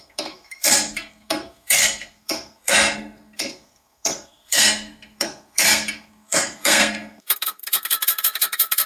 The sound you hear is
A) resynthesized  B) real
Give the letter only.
A